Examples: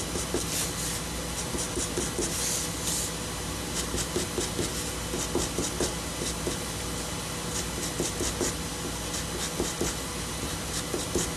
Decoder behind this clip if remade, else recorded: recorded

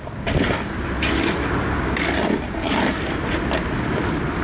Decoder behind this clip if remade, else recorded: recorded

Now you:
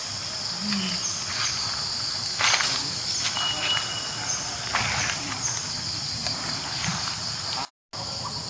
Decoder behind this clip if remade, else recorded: recorded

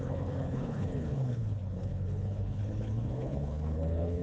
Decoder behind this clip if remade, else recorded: remade, codec, HILCodec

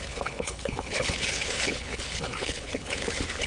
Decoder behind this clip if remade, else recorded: remade, codec, HILCodec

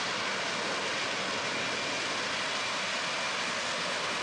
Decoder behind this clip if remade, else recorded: recorded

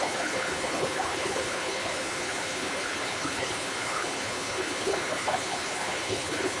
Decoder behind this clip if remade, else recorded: remade, codec, HILCodec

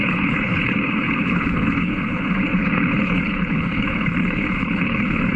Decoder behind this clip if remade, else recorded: remade, codec, HILCodec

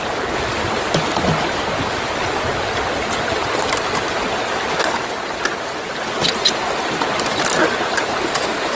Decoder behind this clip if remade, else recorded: recorded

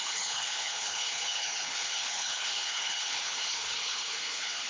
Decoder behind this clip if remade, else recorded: remade, codec, HILCodec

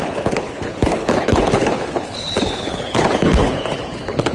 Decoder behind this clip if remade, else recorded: remade, codec, HILCodec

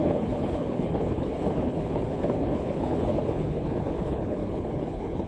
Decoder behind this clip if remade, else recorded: remade, codec, HILCodec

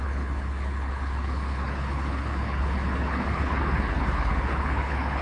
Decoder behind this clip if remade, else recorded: remade, codec, HILCodec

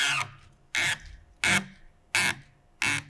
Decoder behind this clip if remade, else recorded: recorded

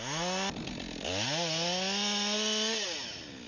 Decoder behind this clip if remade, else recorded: recorded